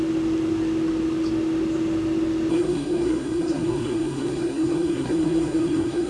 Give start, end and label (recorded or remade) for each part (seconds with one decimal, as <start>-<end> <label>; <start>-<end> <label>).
0.0-2.5 recorded; 2.5-6.1 remade